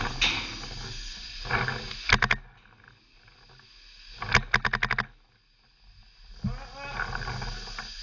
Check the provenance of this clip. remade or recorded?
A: recorded